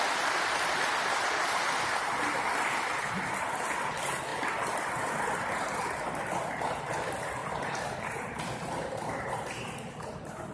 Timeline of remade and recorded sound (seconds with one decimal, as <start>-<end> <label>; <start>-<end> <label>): 0.0-7.4 recorded; 7.4-8.4 remade; 8.4-10.5 recorded

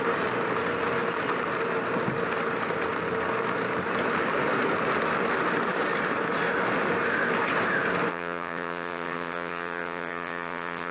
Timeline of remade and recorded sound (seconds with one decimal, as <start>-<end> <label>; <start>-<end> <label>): 0.0-8.1 recorded; 8.1-10.9 remade

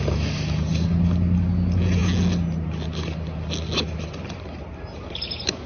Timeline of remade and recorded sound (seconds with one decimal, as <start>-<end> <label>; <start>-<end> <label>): 0.0-5.7 recorded

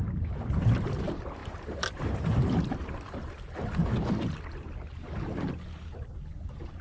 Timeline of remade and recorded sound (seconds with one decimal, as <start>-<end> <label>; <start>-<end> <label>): 0.0-6.8 recorded

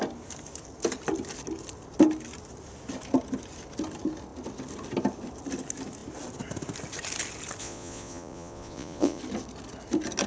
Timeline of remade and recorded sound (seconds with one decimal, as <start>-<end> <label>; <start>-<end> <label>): 0.0-7.6 recorded; 7.6-9.2 remade; 9.2-10.3 recorded